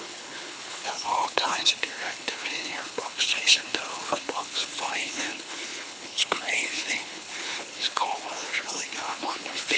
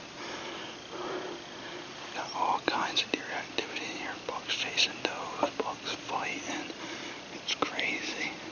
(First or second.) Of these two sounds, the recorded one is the second